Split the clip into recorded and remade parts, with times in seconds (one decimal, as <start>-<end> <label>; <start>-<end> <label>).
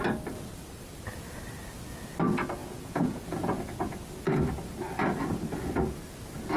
0.0-2.6 recorded; 2.6-3.6 remade; 3.6-6.6 recorded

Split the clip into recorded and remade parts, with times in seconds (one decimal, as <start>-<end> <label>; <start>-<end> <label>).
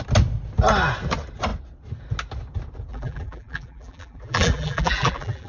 0.0-2.9 recorded; 2.9-5.5 remade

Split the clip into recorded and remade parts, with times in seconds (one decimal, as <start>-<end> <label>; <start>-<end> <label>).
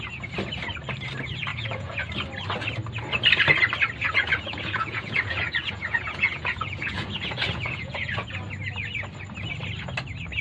0.0-1.5 recorded; 1.5-2.1 remade; 2.1-4.0 recorded; 4.0-8.3 remade; 8.3-10.4 recorded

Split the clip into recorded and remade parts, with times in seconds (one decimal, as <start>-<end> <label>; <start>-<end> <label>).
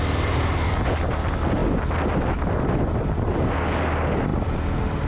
0.0-5.1 recorded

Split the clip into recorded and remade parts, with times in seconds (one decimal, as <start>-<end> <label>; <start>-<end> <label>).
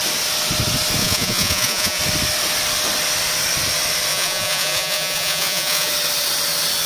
0.0-1.0 recorded; 1.0-2.0 remade; 2.0-4.1 recorded; 4.1-5.9 remade; 5.9-6.9 recorded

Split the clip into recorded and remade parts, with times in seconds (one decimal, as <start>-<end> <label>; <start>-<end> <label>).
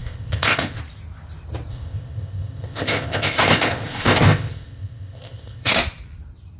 0.0-0.8 remade; 0.8-1.7 recorded; 1.7-5.7 remade; 5.7-6.6 recorded